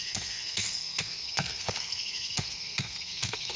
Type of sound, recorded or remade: remade